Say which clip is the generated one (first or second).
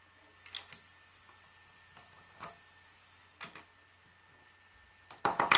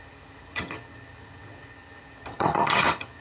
second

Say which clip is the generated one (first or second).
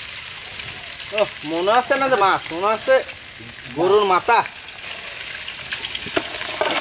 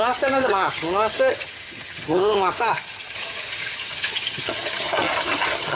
second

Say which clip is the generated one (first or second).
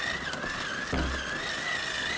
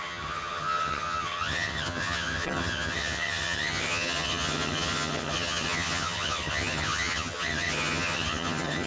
second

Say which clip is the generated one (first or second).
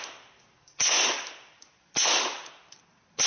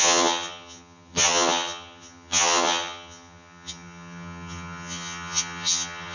second